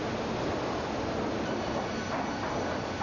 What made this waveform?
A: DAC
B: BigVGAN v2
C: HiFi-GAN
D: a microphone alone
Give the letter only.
B